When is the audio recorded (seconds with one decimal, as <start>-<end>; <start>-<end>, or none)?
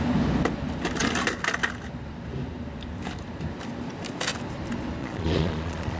0.0-5.0